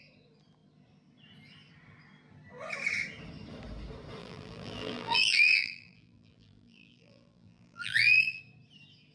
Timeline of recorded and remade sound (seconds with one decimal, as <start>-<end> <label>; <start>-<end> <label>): 0.0-4.2 recorded; 4.2-8.4 remade; 8.4-9.1 recorded